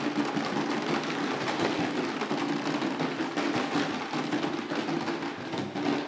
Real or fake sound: real